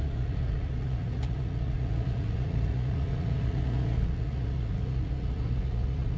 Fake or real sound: fake